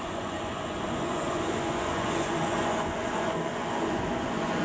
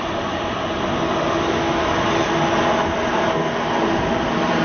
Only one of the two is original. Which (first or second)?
second